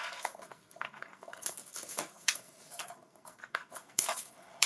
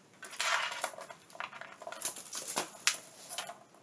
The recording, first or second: second